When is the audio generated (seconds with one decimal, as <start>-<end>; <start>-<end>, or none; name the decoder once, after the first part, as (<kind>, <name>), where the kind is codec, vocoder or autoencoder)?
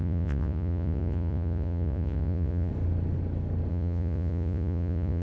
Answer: 0.0-2.7 (vocoder, Vocos); 3.7-5.2